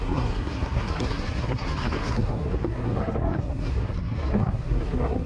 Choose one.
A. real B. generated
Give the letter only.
B